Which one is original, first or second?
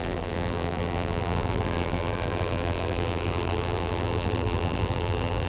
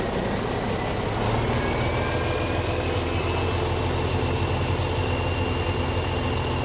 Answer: second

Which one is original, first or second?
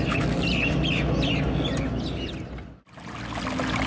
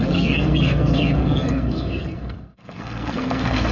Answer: first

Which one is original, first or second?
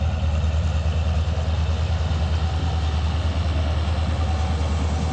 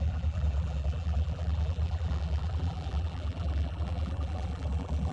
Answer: first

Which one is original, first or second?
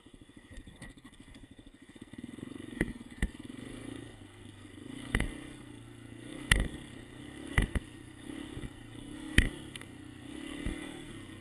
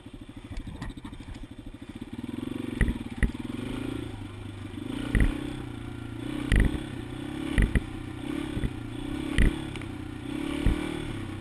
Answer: second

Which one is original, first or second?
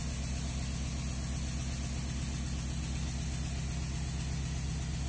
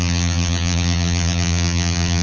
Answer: first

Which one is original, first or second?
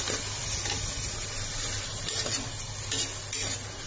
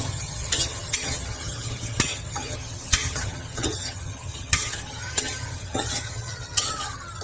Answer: first